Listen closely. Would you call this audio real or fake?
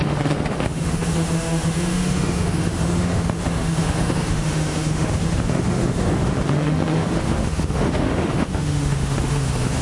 fake